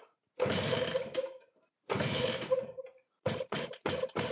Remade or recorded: remade